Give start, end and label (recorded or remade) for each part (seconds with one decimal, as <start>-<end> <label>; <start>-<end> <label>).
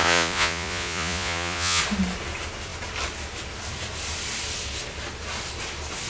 0.0-1.8 remade; 1.8-6.1 recorded